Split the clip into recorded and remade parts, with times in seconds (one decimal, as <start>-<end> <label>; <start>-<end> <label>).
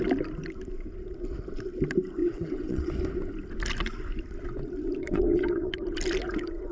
0.0-2.2 recorded; 2.2-2.9 remade; 2.9-5.0 recorded; 5.0-5.7 remade; 5.7-6.7 recorded